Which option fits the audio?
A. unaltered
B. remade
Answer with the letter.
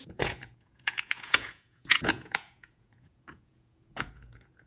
B